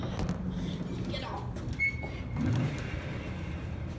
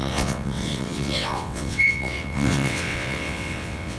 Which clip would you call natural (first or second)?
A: first